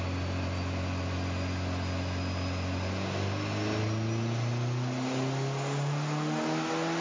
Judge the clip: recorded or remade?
recorded